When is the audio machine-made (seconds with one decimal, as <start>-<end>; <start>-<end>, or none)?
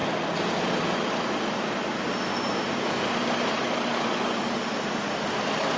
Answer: none